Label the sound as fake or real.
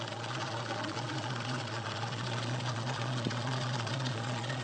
fake